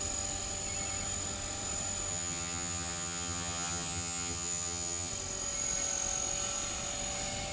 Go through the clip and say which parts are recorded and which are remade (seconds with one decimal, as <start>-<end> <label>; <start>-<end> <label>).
0.0-2.1 recorded; 2.1-5.1 remade; 5.1-7.5 recorded